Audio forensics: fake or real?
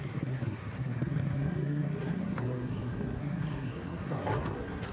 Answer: fake